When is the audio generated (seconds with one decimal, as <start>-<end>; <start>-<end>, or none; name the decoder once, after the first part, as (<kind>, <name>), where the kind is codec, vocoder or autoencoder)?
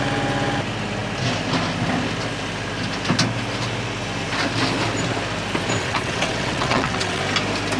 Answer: 5.8-7.2 (vocoder, WaveNeXt)